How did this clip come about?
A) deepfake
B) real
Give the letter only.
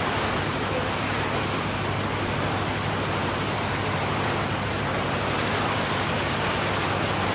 B